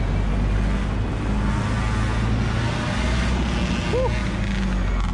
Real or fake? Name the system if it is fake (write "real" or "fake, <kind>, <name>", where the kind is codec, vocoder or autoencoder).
real